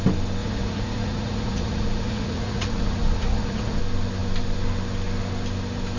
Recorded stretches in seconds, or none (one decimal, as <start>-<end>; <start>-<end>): 0.0-0.4; 3.8-6.0